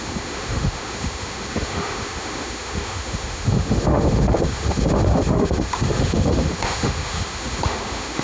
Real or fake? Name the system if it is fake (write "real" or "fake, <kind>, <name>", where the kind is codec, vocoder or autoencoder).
fake, autoencoder, DAC-VAE